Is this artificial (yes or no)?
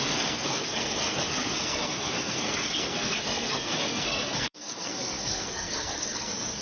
yes